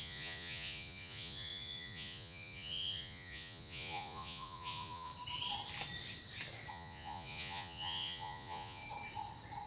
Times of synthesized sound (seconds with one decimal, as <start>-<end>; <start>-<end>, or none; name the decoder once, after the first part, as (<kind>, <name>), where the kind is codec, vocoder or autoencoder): 0.0-5.1 (vocoder, Vocos); 6.7-8.8